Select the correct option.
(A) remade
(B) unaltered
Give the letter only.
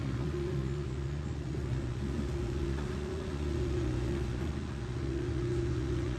A